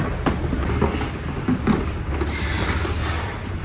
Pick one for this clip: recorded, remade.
recorded